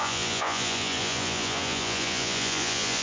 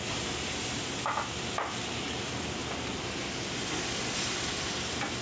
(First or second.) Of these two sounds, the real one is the second